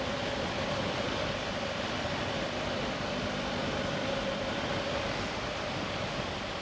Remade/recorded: remade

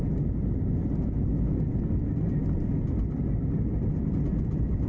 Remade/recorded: recorded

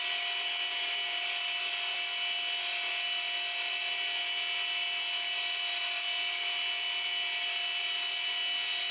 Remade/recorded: recorded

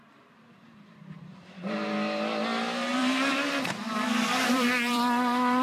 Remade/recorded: remade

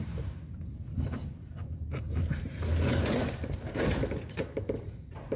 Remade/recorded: remade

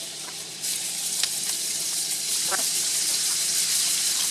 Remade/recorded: remade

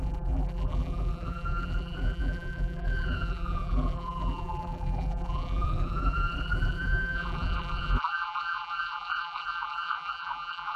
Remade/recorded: remade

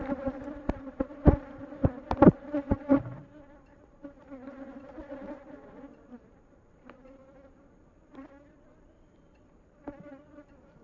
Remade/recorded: remade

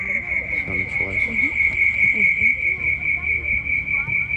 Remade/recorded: recorded